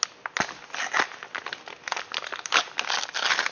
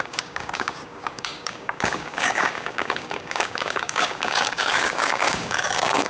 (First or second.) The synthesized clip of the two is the second